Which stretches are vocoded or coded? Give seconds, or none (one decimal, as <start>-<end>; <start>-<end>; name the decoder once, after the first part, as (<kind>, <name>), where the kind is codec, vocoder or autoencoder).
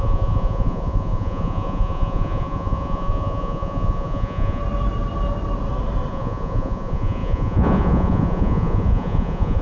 0.0-4.6 (vocoder, Vocos); 6.1-9.6